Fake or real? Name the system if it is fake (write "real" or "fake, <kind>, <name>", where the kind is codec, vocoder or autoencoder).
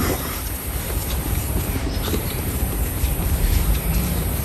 fake, vocoder, BigVGAN v2